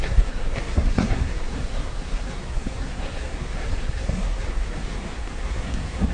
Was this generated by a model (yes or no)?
yes